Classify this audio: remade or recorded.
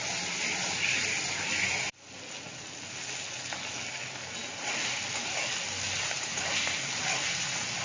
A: recorded